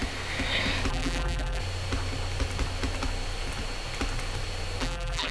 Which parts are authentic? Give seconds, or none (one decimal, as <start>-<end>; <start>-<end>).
0.0-0.9; 1.6-4.8

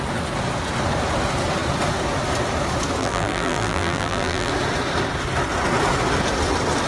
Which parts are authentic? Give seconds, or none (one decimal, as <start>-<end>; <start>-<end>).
0.0-3.0; 4.5-6.9